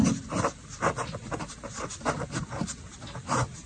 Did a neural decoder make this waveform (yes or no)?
no